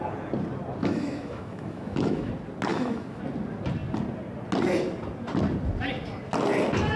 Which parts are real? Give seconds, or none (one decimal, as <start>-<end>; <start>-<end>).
0.0-0.8; 2.3-2.7; 3.2-7.0

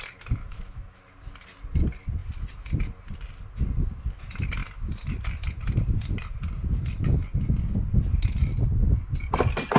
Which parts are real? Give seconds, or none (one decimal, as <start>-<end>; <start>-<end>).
0.0-0.4; 1.0-9.8

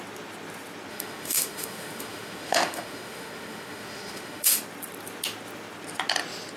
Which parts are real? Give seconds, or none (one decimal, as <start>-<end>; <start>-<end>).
0.0-0.9; 4.6-6.6

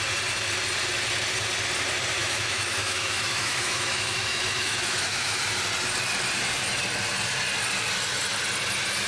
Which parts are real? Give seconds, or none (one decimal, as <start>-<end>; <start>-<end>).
0.0-2.2; 5.4-9.1

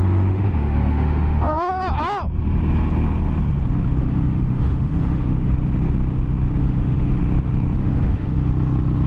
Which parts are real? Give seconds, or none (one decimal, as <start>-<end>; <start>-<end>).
1.7-4.0; 5.5-6.6; 7.2-7.8; 8.5-9.1

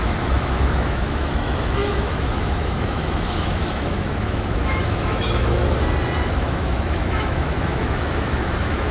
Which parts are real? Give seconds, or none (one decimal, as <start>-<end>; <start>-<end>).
5.6-6.2

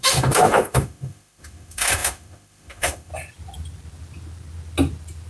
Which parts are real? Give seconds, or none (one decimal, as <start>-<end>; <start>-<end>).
3.1-5.3

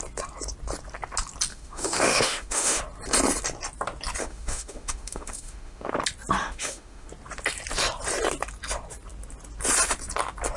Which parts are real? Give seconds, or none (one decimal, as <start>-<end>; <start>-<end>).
0.0-1.5; 2.8-4.2; 5.9-6.4; 7.1-10.6